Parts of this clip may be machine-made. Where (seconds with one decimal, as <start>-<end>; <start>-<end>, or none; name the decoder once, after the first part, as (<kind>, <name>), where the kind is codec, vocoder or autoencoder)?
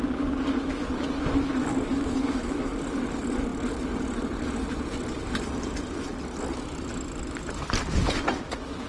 1.9-2.7 (autoencoder, DAC-VAE)